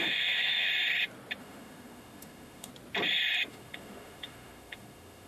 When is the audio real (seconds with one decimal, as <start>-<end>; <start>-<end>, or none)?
0.7-1.4; 2.7-3.5